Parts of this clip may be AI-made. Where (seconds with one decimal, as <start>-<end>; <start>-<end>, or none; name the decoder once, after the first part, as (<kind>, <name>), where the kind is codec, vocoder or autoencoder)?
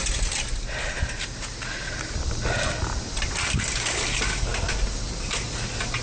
none